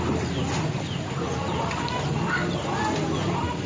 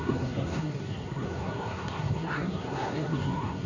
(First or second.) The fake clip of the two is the second